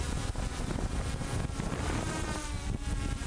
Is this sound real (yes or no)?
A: yes